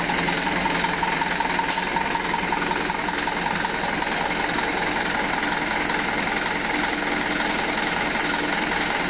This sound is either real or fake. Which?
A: real